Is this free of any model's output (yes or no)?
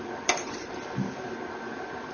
no